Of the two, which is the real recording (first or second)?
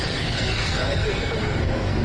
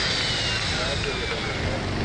second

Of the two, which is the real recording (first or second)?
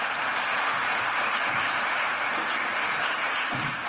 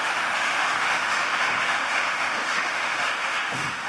first